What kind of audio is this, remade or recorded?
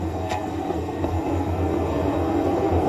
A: remade